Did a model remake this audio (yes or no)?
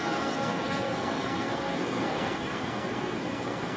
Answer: yes